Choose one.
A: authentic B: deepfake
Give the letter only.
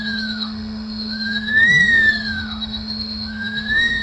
B